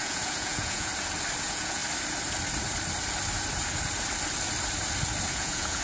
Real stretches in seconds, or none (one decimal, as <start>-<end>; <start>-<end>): 0.9-1.4; 1.8-5.3